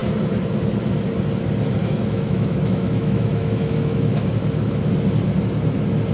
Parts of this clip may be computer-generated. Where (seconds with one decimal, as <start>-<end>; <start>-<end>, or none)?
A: 1.8-4.9